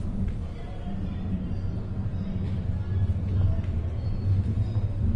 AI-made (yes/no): no